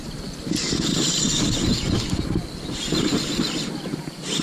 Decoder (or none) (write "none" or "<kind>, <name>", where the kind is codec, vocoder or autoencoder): none